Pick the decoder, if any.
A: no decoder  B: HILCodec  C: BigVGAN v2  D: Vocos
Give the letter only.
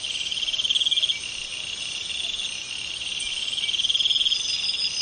A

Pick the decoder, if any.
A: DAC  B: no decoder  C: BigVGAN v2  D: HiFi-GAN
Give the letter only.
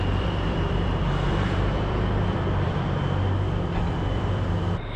C